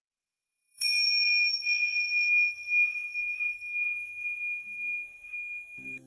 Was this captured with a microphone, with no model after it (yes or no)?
no